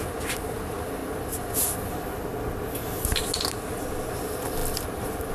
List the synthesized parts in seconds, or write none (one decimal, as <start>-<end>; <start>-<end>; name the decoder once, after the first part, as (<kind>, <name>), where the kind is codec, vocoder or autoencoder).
none